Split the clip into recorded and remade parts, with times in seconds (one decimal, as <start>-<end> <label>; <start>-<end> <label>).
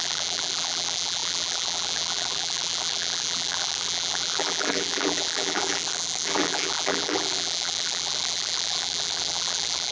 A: 0.0-9.9 remade